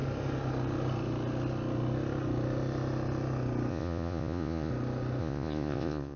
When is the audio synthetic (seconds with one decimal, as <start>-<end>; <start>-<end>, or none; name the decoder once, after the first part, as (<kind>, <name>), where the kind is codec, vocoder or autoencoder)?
3.7-4.7 (vocoder, Vocos); 5.2-6.2